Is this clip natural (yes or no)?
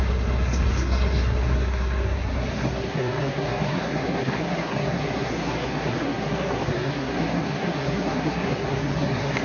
no